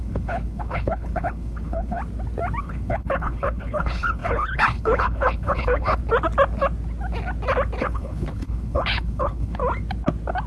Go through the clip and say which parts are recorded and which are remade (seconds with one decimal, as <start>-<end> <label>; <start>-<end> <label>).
0.0-2.0 remade; 2.0-2.6 recorded; 2.6-6.0 remade; 6.0-7.8 recorded; 7.8-9.6 remade; 9.6-10.5 recorded